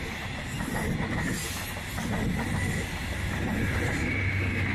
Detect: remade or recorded recorded